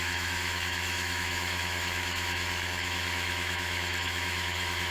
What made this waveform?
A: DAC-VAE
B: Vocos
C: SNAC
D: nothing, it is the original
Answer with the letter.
A